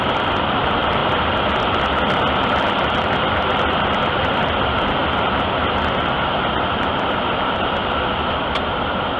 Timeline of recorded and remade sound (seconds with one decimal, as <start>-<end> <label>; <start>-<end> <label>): 0.0-5.0 remade; 5.0-6.9 recorded; 6.9-9.2 remade